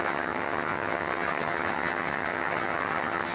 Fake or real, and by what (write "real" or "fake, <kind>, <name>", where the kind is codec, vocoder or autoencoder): fake, vocoder, HiFi-GAN